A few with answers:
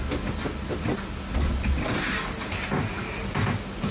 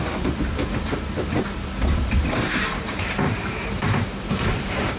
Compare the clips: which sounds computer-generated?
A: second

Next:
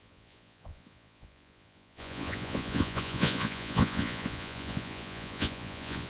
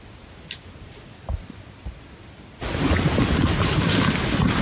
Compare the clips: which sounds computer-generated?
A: first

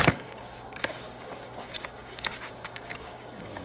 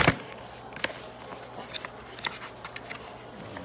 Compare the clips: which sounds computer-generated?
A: first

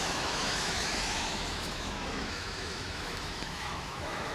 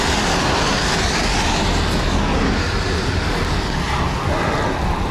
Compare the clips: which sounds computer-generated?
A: first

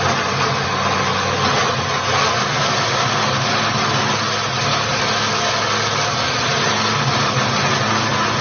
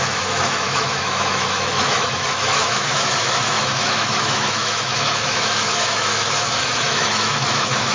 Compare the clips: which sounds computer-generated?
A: second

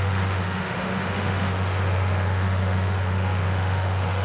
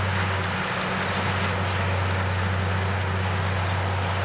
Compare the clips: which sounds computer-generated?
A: first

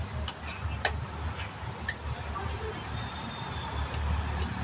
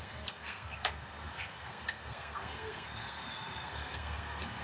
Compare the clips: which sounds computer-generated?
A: second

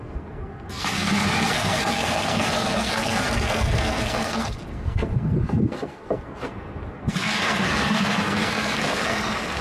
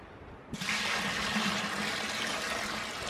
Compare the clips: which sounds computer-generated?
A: first